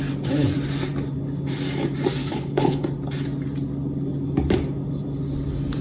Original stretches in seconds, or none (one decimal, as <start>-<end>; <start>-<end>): 0.0-2.2; 2.8-5.8